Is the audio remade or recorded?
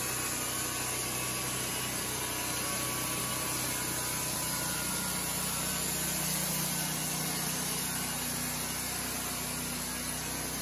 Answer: recorded